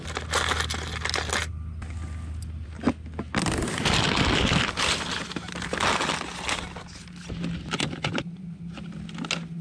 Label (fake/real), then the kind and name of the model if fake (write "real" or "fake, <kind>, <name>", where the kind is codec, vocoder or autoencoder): real